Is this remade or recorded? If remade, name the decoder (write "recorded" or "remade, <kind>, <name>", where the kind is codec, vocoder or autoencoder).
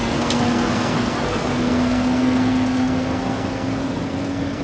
remade, codec, SNAC